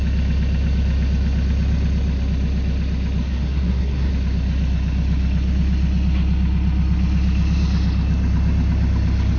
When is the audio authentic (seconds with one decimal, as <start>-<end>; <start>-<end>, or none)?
0.0-3.2; 4.1-9.4